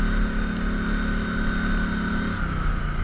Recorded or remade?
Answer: recorded